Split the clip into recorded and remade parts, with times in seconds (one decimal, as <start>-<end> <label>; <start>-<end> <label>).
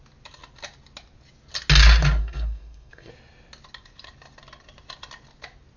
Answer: 0.0-2.2 recorded; 2.2-3.1 remade; 3.1-5.8 recorded